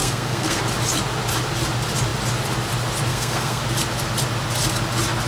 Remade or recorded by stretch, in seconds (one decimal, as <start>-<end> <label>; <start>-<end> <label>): 0.0-0.6 remade; 0.6-3.1 recorded; 3.1-3.6 remade; 3.6-5.3 recorded